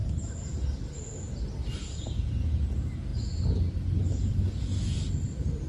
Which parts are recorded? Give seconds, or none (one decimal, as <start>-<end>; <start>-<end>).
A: 0.0-5.7